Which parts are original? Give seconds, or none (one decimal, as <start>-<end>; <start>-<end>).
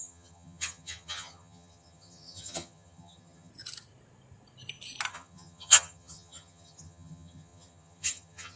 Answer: 3.5-5.1